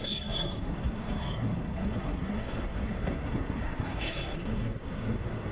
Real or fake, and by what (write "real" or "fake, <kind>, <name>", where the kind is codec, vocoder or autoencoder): fake, codec, SNAC